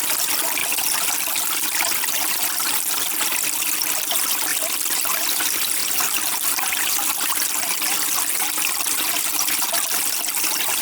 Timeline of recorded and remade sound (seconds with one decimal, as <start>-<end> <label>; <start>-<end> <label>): 0.0-10.8 recorded